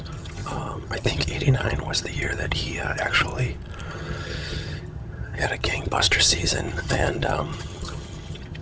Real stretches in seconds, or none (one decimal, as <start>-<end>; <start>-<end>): 3.3-3.9